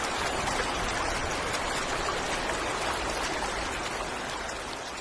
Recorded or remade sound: recorded